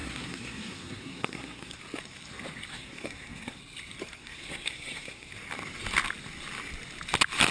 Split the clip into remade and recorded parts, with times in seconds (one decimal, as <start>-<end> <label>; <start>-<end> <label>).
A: 0.0-1.8 remade; 1.8-2.7 recorded; 2.7-3.6 remade; 3.6-4.2 recorded; 4.2-5.3 remade; 5.3-7.5 recorded